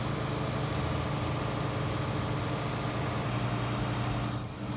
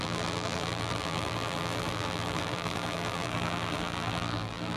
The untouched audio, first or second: first